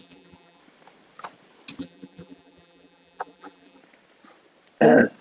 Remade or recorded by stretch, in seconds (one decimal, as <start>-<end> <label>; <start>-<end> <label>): 0.0-0.6 remade; 0.6-1.8 recorded; 1.8-3.8 remade; 3.8-5.2 recorded